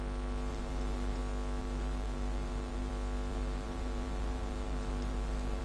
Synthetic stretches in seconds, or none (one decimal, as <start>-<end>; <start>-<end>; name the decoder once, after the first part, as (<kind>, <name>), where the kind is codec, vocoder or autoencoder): 0.5-1.2 (vocoder, BigVGAN v2); 1.6-2.9; 3.3-5.6